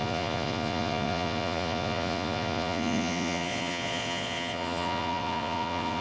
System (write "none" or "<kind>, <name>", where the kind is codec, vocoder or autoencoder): vocoder, Vocos